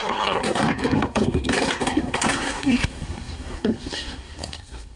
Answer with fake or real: fake